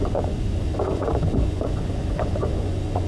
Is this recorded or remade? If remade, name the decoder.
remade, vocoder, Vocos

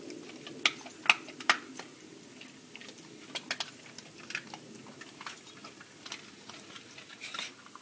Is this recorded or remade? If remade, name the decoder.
recorded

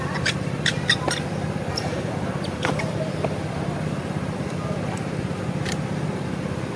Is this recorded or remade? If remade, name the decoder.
remade, vocoder, BigVGAN v2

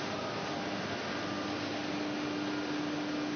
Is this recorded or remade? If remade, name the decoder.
recorded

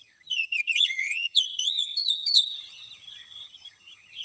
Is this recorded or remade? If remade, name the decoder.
remade, vocoder, HiFi-GAN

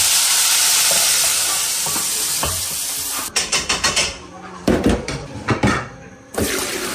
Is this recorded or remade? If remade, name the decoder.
remade, vocoder, BigVGAN v2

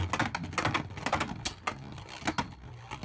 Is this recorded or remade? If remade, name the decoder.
recorded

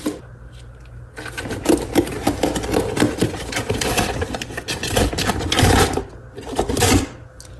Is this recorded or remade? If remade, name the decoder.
recorded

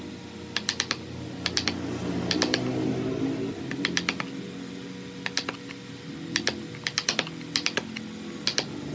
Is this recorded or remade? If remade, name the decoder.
recorded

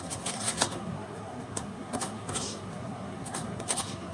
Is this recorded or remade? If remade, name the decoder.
remade, codec, SNAC